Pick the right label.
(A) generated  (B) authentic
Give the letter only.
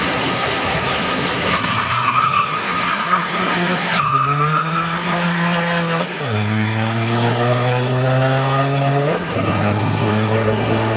A